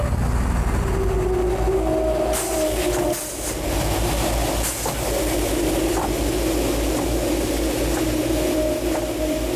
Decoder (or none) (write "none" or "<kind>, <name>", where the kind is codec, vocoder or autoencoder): none